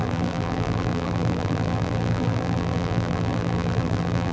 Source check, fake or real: fake